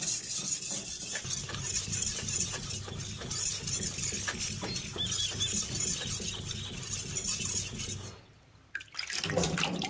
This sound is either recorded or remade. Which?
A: recorded